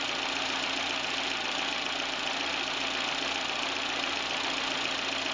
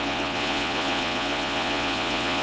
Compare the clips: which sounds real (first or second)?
first